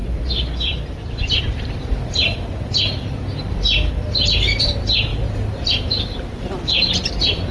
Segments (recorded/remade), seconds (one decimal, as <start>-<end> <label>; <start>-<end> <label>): 0.0-3.9 remade; 3.9-5.1 recorded; 5.1-7.1 remade; 7.1-7.5 recorded

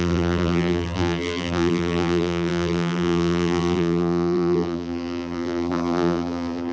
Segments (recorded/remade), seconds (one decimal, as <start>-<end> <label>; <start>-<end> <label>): 0.0-6.7 remade